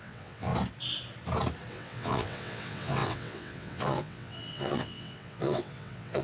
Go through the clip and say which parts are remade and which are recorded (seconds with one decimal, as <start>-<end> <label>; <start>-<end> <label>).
0.0-0.5 remade; 0.5-1.7 recorded; 1.7-6.2 remade